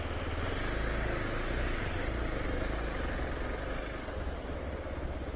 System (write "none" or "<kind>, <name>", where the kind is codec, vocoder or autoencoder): none